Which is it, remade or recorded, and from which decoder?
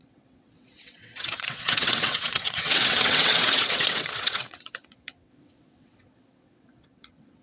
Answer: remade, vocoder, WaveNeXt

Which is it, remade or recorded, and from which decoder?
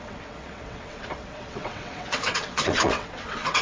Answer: remade, vocoder, WaveNeXt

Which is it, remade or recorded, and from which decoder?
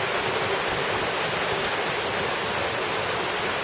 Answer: recorded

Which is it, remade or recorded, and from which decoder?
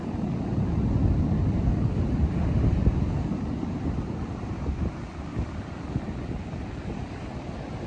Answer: recorded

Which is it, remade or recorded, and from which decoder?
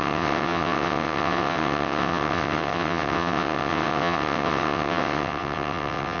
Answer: remade, vocoder, WaveNeXt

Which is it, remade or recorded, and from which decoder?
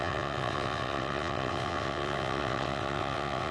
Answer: remade, vocoder, WaveNeXt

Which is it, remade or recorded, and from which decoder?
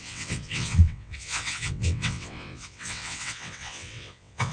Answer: remade, vocoder, WaveNeXt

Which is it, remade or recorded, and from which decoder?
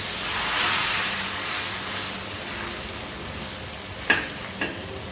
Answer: recorded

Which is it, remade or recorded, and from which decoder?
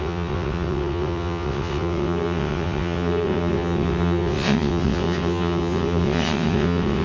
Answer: remade, vocoder, WaveNeXt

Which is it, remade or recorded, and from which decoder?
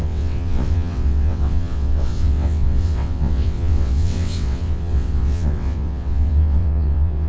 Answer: remade, vocoder, WaveNeXt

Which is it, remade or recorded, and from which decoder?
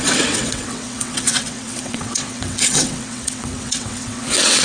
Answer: remade, vocoder, WaveNeXt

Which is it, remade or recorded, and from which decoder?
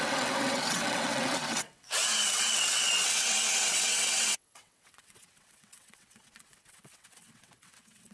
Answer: remade, vocoder, WaveNeXt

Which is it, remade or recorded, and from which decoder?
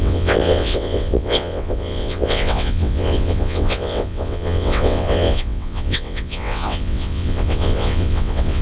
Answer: remade, vocoder, WaveNeXt